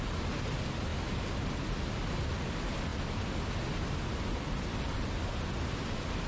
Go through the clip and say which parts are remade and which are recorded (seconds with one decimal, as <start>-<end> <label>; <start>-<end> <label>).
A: 0.0-6.3 recorded